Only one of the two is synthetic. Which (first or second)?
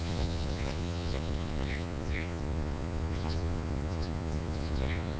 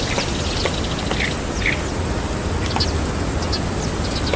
first